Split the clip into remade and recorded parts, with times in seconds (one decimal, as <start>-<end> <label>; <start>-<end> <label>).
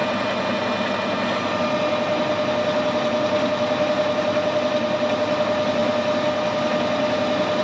0.0-7.6 recorded